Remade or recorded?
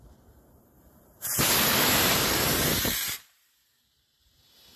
remade